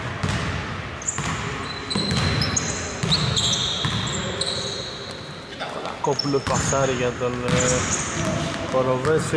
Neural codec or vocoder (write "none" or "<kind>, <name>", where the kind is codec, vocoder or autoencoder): none